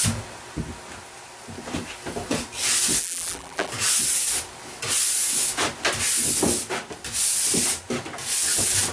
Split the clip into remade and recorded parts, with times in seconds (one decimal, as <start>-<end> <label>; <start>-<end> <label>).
0.0-3.0 recorded; 3.0-3.7 remade; 3.7-8.9 recorded